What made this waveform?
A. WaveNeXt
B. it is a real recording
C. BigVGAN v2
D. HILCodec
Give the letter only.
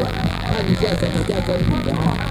C